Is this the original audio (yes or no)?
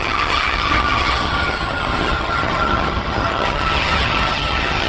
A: no